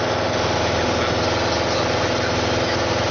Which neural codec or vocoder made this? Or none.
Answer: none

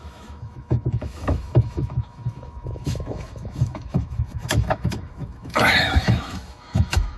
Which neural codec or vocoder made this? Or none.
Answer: autoencoder, DAC-VAE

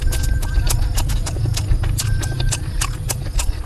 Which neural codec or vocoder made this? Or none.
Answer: none